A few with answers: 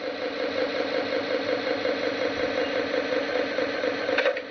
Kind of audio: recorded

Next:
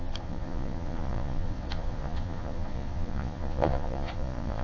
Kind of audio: remade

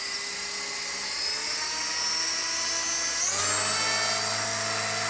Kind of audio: recorded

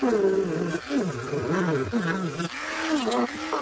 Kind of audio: recorded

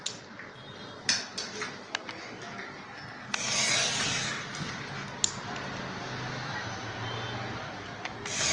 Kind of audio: recorded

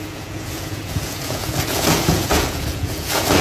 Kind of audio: remade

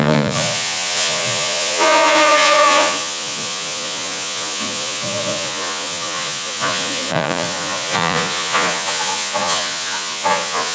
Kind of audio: remade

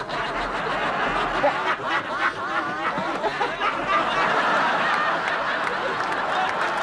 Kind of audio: recorded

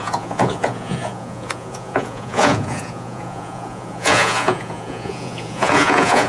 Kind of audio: remade